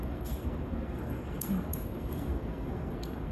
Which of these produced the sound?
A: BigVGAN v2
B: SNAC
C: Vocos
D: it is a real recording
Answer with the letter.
B